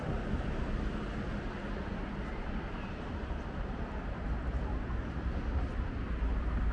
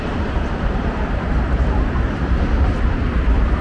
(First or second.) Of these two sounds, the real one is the first